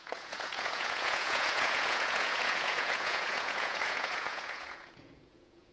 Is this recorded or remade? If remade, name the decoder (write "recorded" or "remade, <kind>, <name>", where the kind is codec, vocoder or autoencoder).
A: remade, vocoder, Vocos